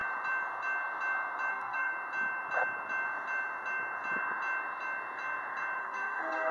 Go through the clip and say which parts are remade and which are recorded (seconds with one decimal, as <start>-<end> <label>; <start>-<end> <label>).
0.0-1.5 recorded; 1.5-1.9 remade; 1.9-5.8 recorded; 5.8-6.5 remade